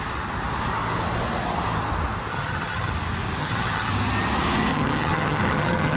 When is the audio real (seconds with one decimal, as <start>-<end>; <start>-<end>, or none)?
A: 0.0-2.3; 2.9-3.4; 3.9-4.7